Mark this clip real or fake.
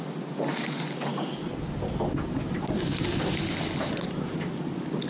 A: real